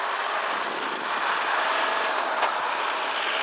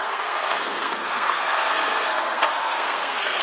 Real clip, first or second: first